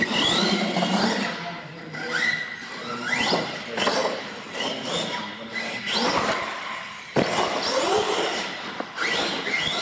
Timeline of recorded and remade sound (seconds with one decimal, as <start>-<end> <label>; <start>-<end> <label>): 0.0-9.8 recorded